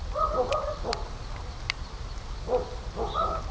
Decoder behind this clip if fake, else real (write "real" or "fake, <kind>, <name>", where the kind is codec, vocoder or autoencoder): real